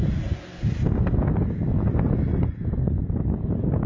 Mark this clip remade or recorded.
recorded